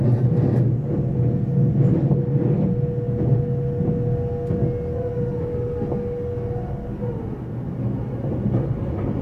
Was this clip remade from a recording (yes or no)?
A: no